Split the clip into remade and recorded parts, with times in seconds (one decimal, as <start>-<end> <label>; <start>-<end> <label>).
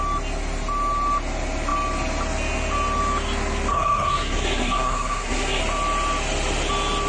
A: 0.0-3.7 recorded; 3.7-5.6 remade; 5.6-7.1 recorded